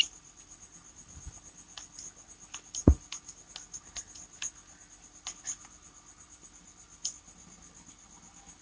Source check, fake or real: real